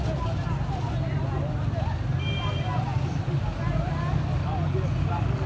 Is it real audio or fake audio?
real